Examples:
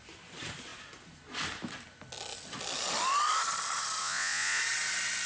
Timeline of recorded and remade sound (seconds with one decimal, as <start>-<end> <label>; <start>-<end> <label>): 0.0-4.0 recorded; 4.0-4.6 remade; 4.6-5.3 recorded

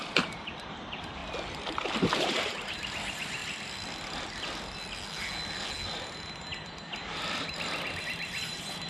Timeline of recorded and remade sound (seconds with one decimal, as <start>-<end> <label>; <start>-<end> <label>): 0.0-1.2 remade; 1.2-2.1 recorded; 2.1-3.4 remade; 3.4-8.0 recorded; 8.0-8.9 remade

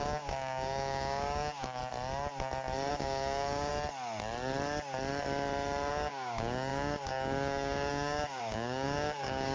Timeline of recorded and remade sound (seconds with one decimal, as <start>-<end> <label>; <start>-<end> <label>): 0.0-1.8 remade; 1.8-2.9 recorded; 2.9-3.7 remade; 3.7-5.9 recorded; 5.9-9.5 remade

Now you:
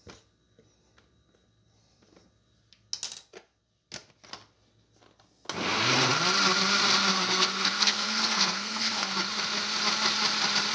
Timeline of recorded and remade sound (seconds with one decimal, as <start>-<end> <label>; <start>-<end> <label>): 0.0-7.1 recorded; 7.1-9.1 remade; 9.1-10.7 recorded

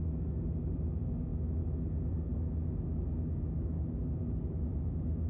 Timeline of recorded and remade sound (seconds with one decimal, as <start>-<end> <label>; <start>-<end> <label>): 0.0-5.3 recorded